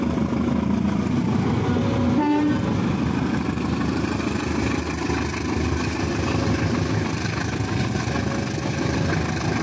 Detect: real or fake real